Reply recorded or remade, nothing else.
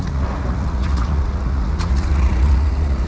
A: remade